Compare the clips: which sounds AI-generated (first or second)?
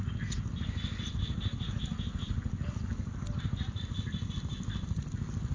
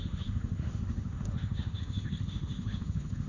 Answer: second